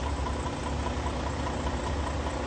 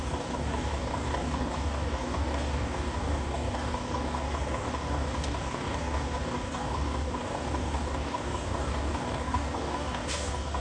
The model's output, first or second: second